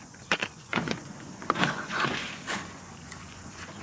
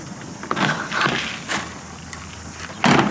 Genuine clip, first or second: second